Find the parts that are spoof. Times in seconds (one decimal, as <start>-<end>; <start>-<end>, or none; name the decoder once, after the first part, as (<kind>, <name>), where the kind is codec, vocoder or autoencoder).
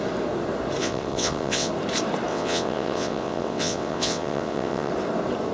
0.8-1.7 (vocoder, WaveNeXt); 2.3-4.9